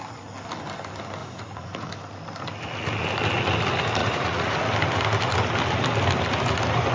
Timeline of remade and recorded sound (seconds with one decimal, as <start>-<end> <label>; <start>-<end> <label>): 0.0-1.2 recorded; 1.2-1.9 remade; 1.9-4.0 recorded; 4.0-4.6 remade; 4.6-6.9 recorded